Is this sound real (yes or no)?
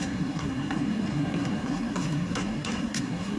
no